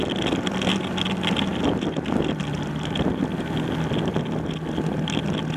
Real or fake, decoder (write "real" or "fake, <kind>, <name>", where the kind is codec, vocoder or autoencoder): real